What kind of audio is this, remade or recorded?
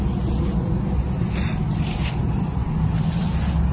recorded